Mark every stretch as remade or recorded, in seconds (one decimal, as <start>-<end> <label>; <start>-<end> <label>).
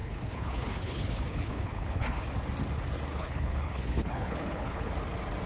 0.0-2.2 remade; 2.2-3.1 recorded; 3.1-4.9 remade; 4.9-5.5 recorded